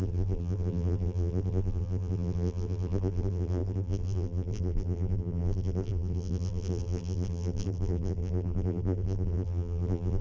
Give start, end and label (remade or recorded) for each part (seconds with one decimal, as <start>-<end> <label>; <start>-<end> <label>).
0.0-10.2 remade